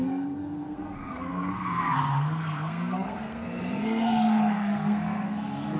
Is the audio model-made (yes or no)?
yes